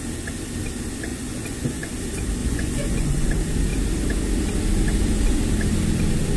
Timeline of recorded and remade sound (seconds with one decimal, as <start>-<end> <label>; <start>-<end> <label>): 0.0-1.1 recorded; 1.1-1.9 remade; 1.9-2.4 recorded; 2.4-3.3 remade; 3.3-6.4 recorded